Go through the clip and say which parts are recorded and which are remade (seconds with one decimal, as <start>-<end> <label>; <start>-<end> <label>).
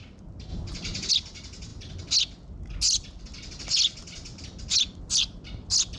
0.0-0.5 recorded; 0.5-1.1 remade; 1.1-6.0 recorded